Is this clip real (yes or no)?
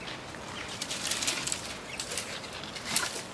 yes